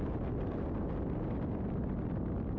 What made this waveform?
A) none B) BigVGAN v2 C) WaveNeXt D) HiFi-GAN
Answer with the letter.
A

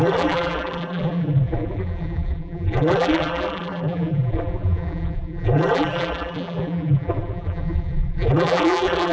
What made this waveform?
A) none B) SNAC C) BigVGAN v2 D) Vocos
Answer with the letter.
C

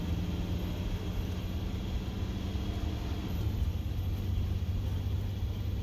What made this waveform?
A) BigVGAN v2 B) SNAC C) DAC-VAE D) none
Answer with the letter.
D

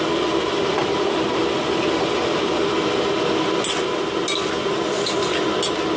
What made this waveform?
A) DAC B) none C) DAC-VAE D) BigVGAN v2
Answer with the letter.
B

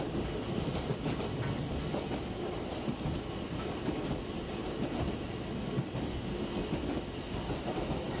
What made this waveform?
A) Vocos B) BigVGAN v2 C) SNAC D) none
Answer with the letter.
D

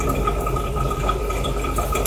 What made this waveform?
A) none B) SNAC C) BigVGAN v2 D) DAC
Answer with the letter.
C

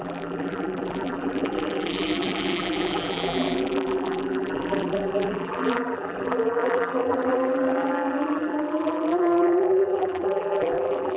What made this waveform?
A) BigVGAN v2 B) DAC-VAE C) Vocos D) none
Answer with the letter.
A